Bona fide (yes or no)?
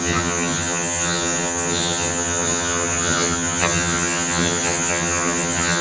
no